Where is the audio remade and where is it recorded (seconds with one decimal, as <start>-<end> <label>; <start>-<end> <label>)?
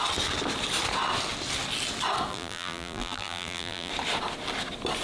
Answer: 0.0-2.3 recorded; 2.3-3.9 remade; 3.9-5.0 recorded